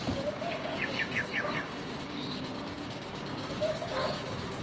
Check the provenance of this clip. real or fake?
fake